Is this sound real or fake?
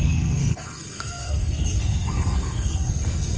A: fake